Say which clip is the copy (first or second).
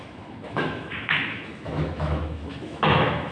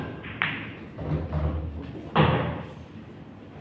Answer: first